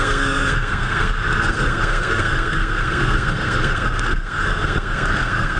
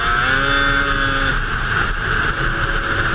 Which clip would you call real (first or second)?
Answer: second